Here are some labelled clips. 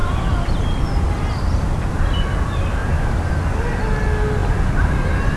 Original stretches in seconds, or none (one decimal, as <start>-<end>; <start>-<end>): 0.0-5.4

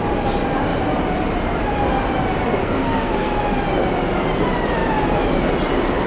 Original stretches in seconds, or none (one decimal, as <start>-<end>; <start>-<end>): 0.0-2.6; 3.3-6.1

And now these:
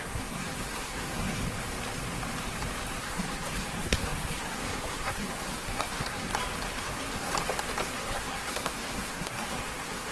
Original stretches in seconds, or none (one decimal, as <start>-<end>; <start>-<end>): 1.4-3.0; 6.3-6.8; 7.3-8.0

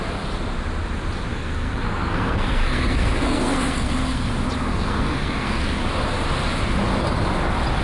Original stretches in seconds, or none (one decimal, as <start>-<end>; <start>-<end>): 0.0-1.3; 4.3-4.7; 5.7-7.8